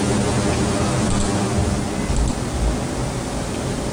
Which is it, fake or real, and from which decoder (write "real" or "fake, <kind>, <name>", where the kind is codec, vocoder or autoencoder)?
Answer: real